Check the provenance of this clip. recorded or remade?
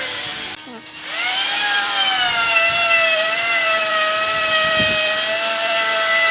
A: remade